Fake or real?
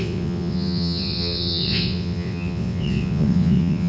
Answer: fake